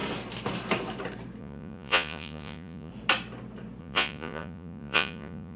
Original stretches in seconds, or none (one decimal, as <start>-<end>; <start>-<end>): 0.0-1.4; 2.9-3.8